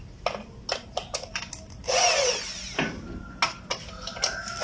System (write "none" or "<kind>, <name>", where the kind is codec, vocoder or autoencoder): none